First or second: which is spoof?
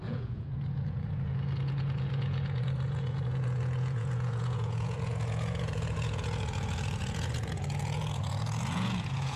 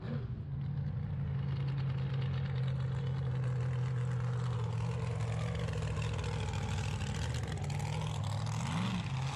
first